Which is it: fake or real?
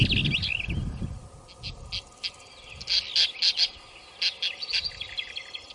real